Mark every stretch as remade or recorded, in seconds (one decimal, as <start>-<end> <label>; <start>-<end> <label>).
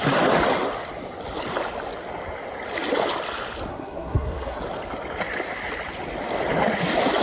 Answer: 0.0-3.7 recorded; 3.7-4.6 remade; 4.6-7.2 recorded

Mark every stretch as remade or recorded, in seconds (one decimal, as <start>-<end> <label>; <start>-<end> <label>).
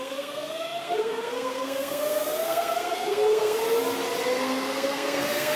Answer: 0.0-3.6 remade; 3.6-4.4 recorded; 4.4-5.6 remade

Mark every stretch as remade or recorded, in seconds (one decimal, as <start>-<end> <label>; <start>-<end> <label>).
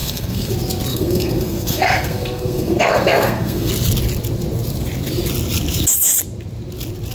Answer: 0.0-0.5 remade; 0.5-0.9 recorded; 0.9-3.7 remade; 3.7-7.1 recorded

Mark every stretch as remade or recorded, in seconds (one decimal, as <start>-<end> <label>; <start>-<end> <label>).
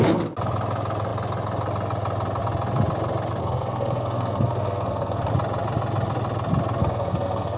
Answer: 0.0-3.4 recorded; 3.4-5.3 remade; 5.3-6.8 recorded; 6.8-7.6 remade